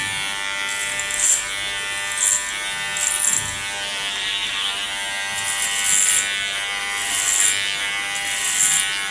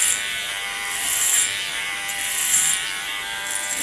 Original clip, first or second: first